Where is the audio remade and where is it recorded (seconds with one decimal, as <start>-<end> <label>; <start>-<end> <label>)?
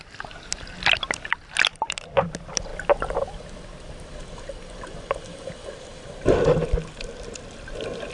0.0-8.1 recorded